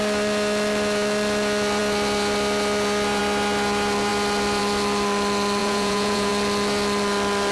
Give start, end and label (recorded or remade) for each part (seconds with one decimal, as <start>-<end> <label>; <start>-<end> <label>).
0.0-5.6 recorded; 5.6-6.3 remade; 6.3-7.5 recorded